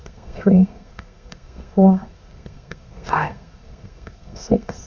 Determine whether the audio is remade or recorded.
remade